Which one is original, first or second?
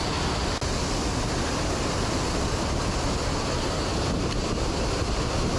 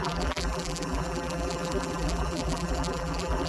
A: first